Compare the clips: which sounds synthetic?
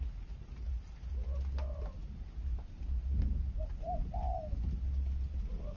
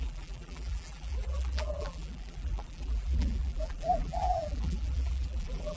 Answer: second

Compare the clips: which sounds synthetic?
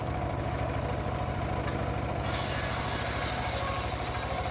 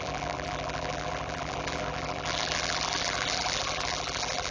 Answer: second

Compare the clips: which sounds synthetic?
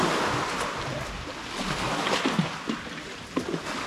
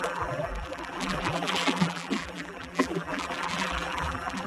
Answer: second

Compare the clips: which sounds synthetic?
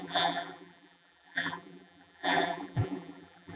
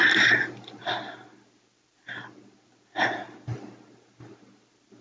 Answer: first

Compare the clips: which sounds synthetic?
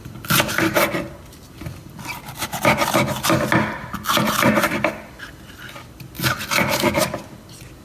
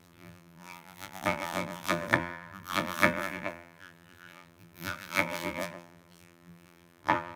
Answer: second